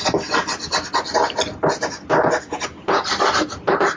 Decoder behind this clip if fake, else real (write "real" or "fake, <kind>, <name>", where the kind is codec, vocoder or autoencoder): real